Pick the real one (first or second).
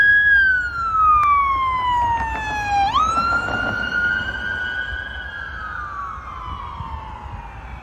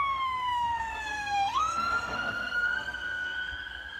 first